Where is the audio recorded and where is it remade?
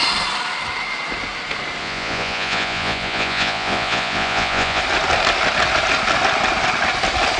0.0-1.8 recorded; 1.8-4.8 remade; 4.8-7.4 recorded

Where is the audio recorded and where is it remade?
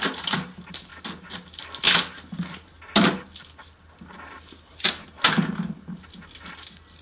0.0-7.0 recorded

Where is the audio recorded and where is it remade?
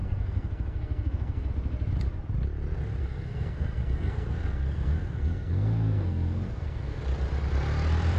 0.0-1.5 remade; 1.5-3.0 recorded; 3.0-7.0 remade; 7.0-8.2 recorded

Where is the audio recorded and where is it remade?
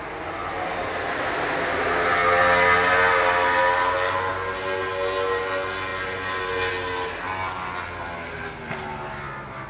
0.0-0.4 recorded; 0.4-1.1 remade; 1.1-9.7 recorded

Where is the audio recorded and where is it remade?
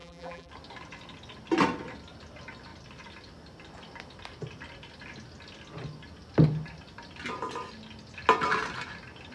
0.0-0.5 remade; 0.5-9.3 recorded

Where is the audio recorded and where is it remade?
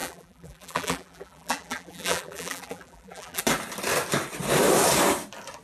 0.0-3.4 remade; 3.4-5.6 recorded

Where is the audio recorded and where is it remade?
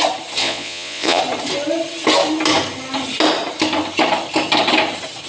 0.0-0.4 recorded; 0.4-1.2 remade; 1.2-5.3 recorded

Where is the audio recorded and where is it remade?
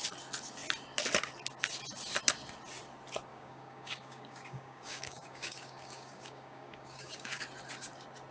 0.0-3.3 recorded; 3.3-7.4 remade; 7.4-8.3 recorded